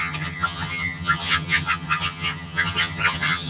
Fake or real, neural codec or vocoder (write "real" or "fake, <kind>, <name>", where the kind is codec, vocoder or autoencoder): fake, vocoder, HiFi-GAN